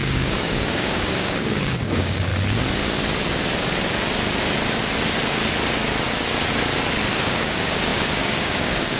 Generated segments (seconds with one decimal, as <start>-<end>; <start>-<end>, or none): 0.0-2.3; 7.1-9.0

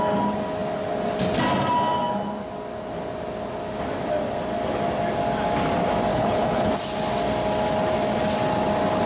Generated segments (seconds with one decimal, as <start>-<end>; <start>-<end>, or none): 6.1-6.7

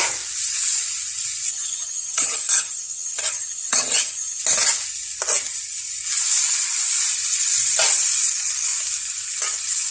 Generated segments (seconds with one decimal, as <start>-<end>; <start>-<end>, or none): 1.5-4.4

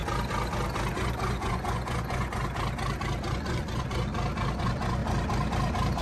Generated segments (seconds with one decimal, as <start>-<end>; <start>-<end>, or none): 0.9-2.4; 3.3-4.1; 4.6-5.0

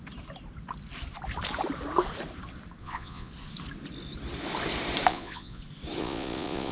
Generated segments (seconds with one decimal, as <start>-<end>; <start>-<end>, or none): 2.8-3.3; 5.1-5.6; 6.0-6.7

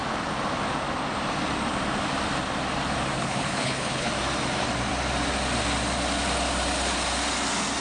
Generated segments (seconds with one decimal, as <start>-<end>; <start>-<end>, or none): 3.2-4.1

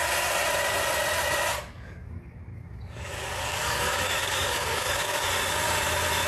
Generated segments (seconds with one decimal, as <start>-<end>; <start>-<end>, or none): 1.5-5.3

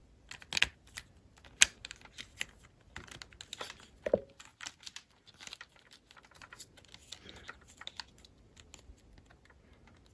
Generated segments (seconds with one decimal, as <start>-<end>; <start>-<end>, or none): none